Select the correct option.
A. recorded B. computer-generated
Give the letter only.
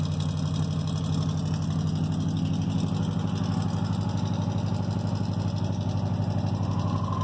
A